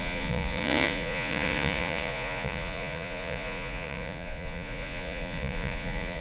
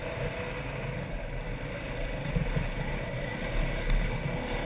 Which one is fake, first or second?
first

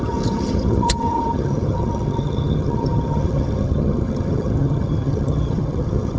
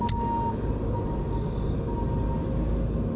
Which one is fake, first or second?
first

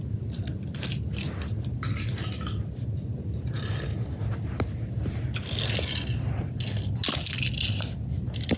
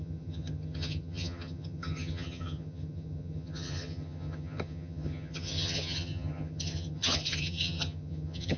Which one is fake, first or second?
second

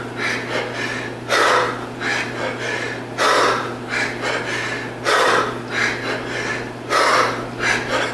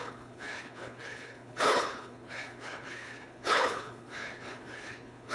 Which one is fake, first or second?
second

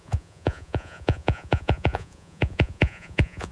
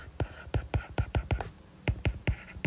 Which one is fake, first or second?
first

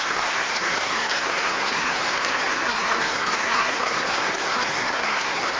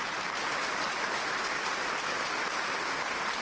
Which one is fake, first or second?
first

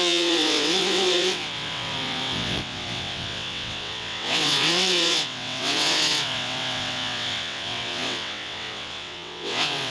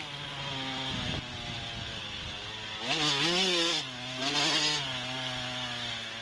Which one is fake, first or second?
first